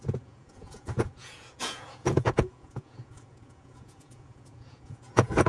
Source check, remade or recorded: remade